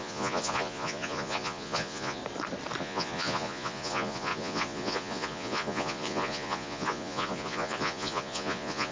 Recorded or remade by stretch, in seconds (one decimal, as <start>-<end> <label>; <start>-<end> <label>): 0.0-2.2 remade; 2.2-2.8 recorded; 2.8-8.9 remade